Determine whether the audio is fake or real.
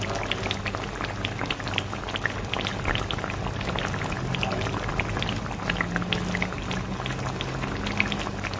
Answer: real